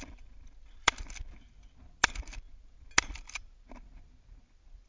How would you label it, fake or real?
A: real